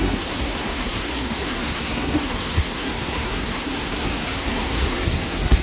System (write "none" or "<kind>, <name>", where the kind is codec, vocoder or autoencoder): codec, SNAC